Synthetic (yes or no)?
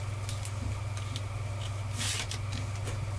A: no